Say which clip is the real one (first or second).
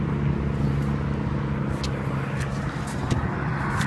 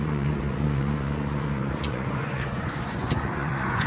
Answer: first